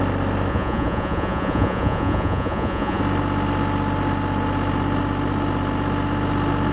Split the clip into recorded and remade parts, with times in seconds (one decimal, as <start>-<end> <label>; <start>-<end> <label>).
0.0-0.5 recorded; 0.5-3.0 remade; 3.0-6.7 recorded